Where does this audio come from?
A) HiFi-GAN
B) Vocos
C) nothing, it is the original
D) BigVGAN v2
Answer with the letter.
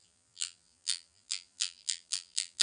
D